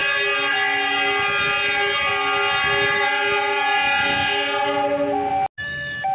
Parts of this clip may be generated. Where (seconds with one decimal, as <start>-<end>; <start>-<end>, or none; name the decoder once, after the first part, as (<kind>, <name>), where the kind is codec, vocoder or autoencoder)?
none